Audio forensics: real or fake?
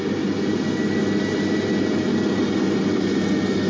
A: real